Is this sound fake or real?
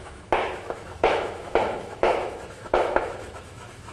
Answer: fake